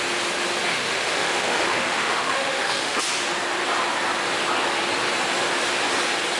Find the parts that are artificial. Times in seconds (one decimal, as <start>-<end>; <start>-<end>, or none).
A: 0.7-3.0